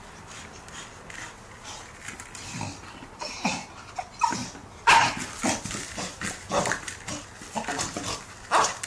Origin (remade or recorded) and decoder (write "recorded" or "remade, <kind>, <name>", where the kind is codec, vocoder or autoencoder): recorded